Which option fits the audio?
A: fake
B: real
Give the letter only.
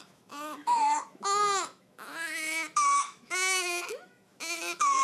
A